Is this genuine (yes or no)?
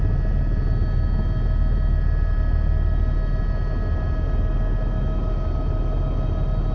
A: yes